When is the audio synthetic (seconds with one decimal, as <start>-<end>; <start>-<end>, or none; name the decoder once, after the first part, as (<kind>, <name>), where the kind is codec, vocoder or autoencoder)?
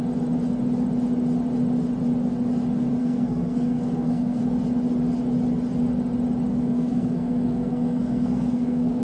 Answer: 3.0-4.4 (codec, SNAC); 6.5-9.0